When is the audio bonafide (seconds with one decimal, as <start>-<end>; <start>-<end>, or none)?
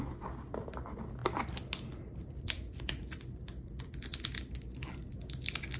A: 0.0-5.8